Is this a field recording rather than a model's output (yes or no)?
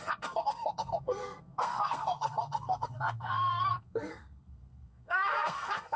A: no